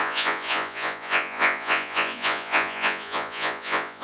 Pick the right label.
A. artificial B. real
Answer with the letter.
A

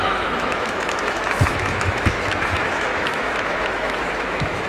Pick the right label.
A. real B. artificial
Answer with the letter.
B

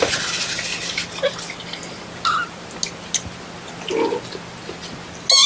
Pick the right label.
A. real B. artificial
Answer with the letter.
A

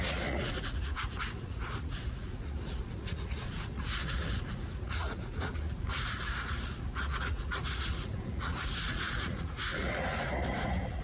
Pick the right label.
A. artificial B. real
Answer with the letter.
A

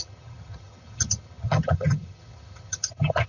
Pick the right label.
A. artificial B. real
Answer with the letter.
A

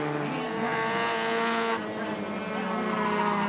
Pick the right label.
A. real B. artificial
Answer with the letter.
A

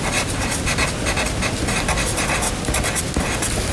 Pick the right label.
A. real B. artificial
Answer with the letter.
A